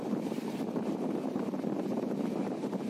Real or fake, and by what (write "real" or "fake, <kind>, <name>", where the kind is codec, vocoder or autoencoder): fake, vocoder, BigVGAN v2